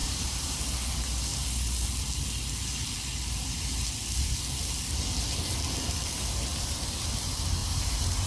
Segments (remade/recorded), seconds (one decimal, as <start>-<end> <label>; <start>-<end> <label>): 0.0-0.6 remade; 0.6-7.6 recorded; 7.6-8.3 remade